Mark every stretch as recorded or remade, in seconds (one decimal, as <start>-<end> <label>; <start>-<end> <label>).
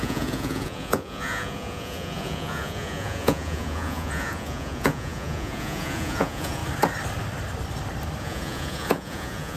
0.0-6.6 remade; 6.6-8.2 recorded; 8.2-9.6 remade